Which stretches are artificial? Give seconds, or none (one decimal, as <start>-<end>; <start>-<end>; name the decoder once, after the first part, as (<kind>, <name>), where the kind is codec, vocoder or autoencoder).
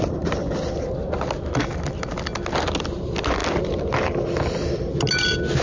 none